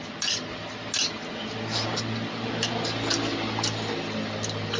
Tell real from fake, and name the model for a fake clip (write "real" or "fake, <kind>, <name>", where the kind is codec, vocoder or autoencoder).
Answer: real